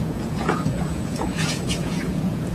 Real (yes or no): no